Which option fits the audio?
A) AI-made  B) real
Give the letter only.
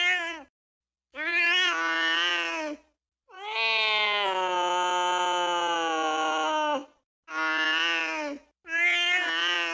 B